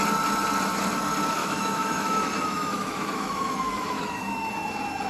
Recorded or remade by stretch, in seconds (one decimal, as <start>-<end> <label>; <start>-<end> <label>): 0.0-1.4 recorded; 1.4-4.5 remade; 4.5-5.1 recorded